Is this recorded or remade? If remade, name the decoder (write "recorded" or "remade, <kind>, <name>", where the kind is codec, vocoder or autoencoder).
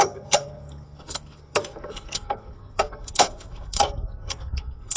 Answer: remade, codec, SNAC